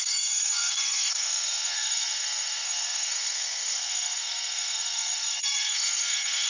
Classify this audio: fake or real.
fake